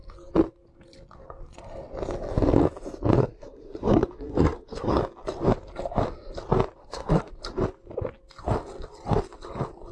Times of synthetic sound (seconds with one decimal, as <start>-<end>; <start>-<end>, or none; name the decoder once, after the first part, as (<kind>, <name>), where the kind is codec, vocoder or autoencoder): 3.2-5.0 (codec, SNAC); 6.8-7.3